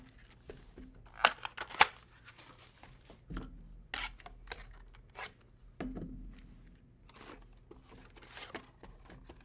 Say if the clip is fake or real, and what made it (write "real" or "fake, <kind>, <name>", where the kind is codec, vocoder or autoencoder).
real